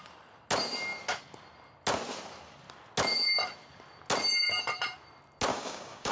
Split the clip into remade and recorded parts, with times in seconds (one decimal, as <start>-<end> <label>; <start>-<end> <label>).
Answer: 0.0-5.5 recorded; 5.5-6.1 remade